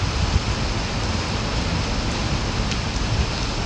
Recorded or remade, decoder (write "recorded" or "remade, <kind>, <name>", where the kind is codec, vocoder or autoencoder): recorded